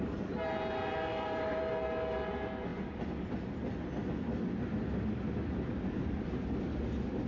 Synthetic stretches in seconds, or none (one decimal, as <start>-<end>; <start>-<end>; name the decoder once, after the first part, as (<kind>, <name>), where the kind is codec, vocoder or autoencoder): 1.1-1.6 (vocoder, BigVGAN v2)